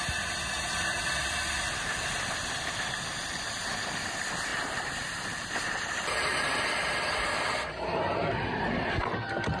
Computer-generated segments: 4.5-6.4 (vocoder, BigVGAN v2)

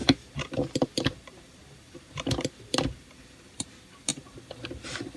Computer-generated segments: 0.0-5.2 (vocoder, BigVGAN v2)

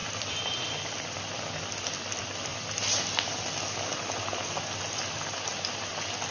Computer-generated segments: 0.0-2.5 (vocoder, BigVGAN v2); 4.8-6.3